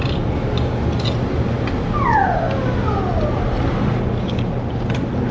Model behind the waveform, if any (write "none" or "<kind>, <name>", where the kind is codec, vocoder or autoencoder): none